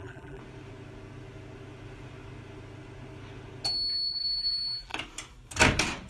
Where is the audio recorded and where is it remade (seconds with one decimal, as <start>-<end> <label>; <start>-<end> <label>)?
0.0-0.4 remade; 0.4-4.1 recorded; 4.1-4.9 remade; 4.9-6.1 recorded